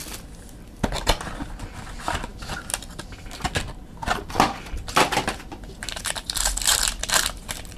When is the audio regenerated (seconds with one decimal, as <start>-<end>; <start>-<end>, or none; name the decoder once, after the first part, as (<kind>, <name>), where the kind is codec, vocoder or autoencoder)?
none